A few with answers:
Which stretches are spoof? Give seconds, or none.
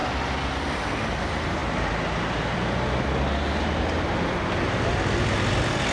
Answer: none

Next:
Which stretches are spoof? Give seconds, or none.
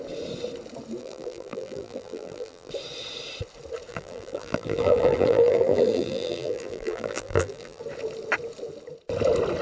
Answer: 1.0-2.7; 3.9-7.8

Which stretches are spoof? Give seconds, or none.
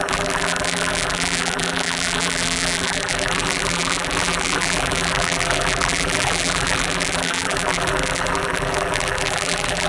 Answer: 0.0-9.9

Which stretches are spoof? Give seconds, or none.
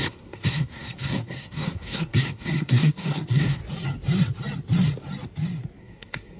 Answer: 0.0-3.6; 5.8-6.4